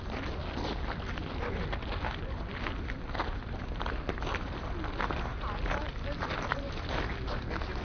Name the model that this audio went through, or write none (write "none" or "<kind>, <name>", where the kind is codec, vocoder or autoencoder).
none